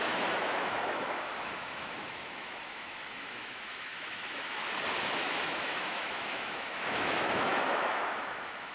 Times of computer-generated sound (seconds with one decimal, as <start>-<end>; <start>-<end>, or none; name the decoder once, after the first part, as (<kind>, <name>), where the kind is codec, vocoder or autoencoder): 0.0-4.6 (autoencoder, DAC-VAE); 5.2-8.7